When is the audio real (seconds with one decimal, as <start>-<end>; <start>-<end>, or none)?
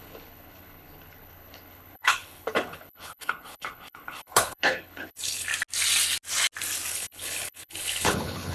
5.5-6.9